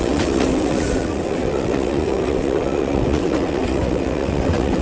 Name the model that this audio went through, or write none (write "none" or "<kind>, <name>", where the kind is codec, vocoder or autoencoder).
vocoder, WaveNeXt